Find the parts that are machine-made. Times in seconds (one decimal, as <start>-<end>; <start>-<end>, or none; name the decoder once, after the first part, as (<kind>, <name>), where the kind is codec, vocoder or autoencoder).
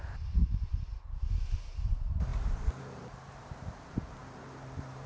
0.0-5.1 (vocoder, BigVGAN v2)